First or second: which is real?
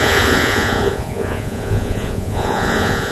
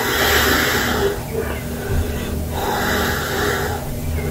second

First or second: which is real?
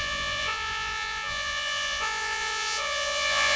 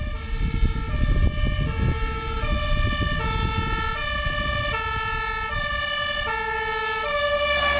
second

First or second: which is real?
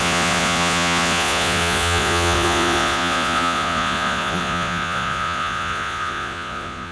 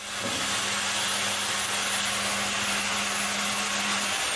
second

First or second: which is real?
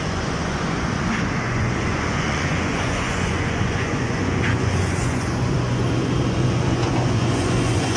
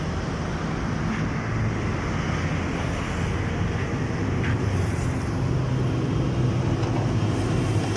second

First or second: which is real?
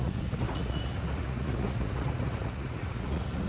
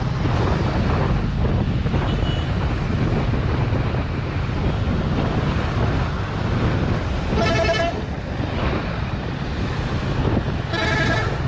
second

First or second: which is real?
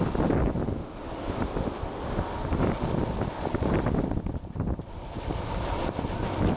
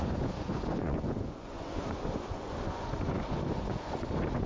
first